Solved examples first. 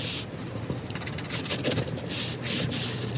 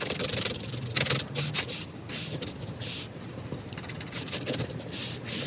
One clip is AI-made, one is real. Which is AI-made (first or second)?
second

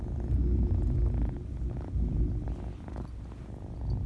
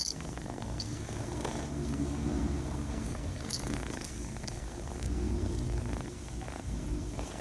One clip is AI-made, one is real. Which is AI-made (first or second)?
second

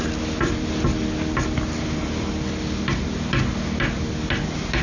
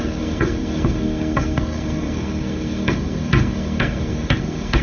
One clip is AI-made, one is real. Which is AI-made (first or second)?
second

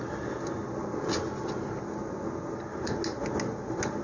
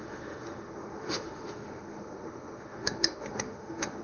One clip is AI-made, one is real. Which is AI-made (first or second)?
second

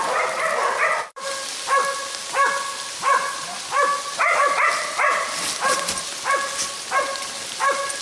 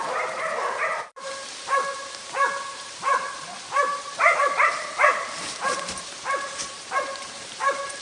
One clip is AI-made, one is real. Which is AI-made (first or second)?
second